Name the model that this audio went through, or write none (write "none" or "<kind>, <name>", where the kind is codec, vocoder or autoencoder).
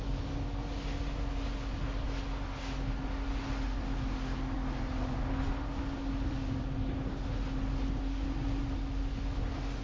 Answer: none